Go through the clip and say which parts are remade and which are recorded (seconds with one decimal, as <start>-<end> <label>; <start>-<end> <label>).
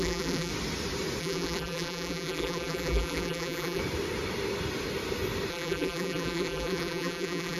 0.0-0.5 remade; 0.5-1.2 recorded; 1.2-3.8 remade; 3.8-5.5 recorded; 5.5-7.6 remade